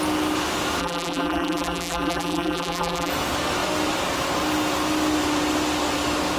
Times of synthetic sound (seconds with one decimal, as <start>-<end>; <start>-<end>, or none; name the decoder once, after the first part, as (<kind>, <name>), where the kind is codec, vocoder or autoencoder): 0.8-3.1 (vocoder, BigVGAN v2)